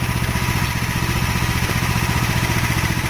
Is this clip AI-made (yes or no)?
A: yes